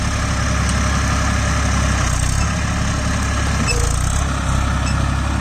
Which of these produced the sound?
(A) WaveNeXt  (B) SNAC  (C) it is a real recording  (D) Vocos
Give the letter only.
C